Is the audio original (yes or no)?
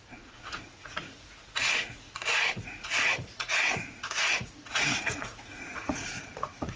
no